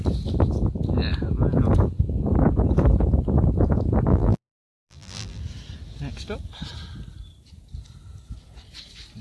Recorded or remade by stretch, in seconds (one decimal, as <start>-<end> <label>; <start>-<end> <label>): 0.0-4.1 recorded; 4.1-5.4 remade; 5.4-9.2 recorded